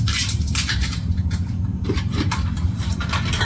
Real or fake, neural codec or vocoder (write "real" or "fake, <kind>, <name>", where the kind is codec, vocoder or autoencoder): fake, vocoder, BigVGAN v2